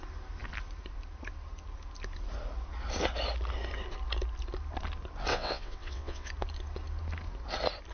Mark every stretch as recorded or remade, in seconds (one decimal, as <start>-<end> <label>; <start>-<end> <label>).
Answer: 0.0-5.3 recorded; 5.3-6.3 remade; 6.3-7.9 recorded